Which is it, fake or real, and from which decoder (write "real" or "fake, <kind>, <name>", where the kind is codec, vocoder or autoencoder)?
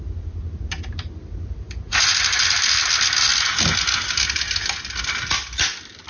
real